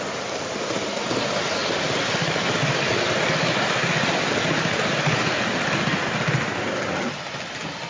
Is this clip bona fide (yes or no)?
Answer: yes